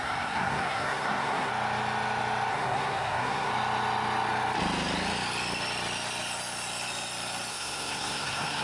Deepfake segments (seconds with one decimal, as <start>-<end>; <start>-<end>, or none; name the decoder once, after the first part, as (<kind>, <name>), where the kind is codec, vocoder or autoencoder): 0.0-1.5 (codec, SNAC); 2.5-3.5; 7.5-8.6